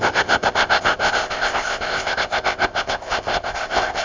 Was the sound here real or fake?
fake